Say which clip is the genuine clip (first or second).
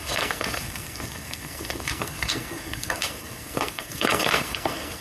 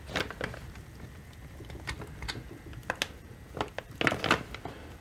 second